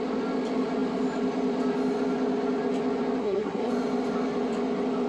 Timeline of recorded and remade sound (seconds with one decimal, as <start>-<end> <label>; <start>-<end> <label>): 0.0-3.2 recorded; 3.2-3.7 remade; 3.7-5.1 recorded